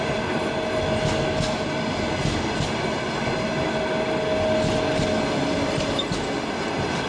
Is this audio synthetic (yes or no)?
no